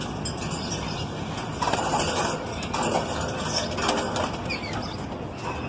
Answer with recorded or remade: recorded